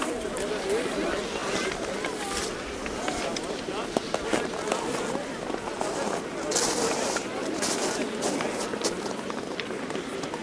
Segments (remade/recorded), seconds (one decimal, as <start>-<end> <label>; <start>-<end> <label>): 0.0-10.4 recorded